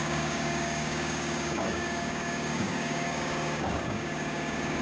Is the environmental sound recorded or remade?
remade